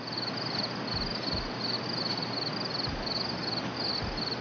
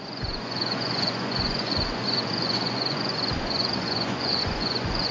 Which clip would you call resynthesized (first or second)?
second